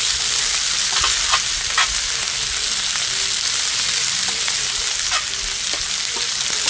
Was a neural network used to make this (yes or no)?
no